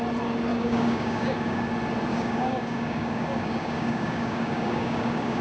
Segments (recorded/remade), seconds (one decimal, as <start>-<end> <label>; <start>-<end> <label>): 0.0-0.5 recorded; 0.5-1.7 remade; 1.7-2.1 recorded; 2.1-5.4 remade